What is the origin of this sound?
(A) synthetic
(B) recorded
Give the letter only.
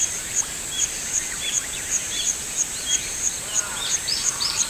A